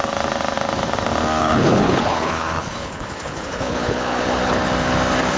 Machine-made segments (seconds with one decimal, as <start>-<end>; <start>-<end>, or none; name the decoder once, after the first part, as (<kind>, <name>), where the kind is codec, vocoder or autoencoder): 1.4-4.6 (codec, HILCodec)

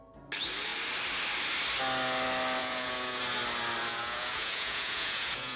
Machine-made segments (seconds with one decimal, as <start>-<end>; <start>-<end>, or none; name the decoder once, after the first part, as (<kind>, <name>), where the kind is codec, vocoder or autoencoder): 2.6-3.2 (vocoder, Vocos); 3.9-5.6

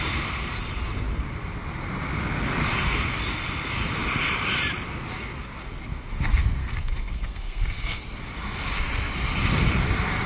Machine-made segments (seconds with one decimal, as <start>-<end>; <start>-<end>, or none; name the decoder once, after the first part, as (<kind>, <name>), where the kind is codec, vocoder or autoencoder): 6.6-8.0 (codec, SNAC)

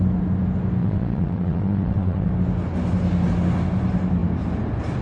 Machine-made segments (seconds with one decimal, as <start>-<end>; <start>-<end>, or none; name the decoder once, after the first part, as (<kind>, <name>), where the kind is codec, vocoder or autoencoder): 0.8-2.3 (vocoder, WaveNeXt)

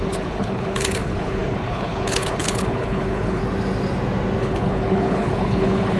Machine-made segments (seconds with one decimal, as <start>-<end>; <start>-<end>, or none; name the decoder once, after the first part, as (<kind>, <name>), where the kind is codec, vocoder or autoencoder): 0.0-3.4 (codec, HILCodec); 4.4-6.0

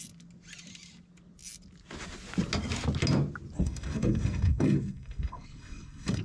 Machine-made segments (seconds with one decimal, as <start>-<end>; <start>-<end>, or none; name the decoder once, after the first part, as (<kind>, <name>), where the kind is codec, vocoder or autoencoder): 3.6-6.2 (codec, SNAC)